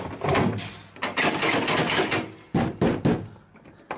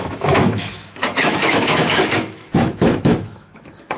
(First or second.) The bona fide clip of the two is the first